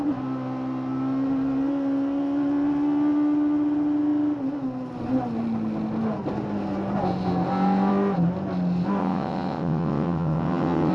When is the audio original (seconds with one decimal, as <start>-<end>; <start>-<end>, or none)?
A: 0.0-9.0